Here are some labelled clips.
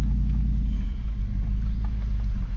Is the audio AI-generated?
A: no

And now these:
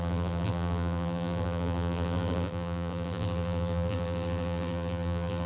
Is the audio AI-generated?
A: yes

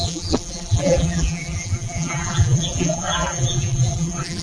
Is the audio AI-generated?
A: yes